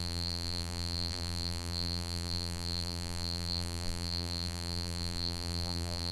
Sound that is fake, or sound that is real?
fake